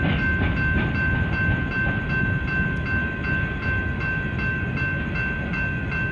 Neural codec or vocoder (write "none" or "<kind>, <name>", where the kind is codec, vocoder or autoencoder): none